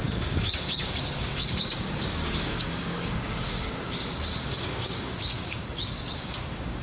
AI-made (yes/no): yes